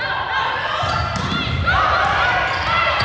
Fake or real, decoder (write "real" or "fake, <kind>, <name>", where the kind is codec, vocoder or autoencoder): real